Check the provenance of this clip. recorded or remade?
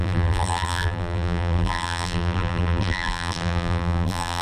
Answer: remade